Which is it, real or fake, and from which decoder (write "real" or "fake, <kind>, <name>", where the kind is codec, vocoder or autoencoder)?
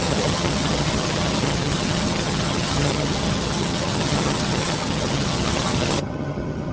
fake, vocoder, HiFi-GAN